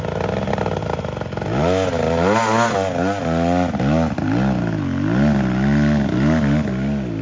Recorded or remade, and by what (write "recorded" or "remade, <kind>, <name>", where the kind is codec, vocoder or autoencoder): recorded